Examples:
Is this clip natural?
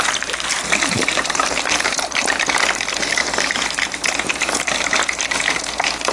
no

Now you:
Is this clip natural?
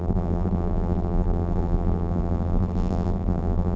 no